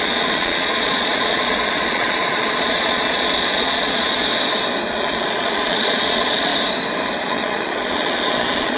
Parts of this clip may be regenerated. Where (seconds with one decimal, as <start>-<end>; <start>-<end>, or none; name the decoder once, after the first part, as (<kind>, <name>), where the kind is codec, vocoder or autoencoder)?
0.0-4.3 (vocoder, Vocos); 4.9-6.5; 7.2-8.8